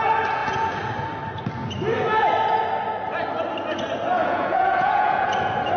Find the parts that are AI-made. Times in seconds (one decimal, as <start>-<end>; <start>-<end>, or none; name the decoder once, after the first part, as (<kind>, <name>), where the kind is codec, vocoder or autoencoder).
4.2-5.3 (vocoder, Vocos)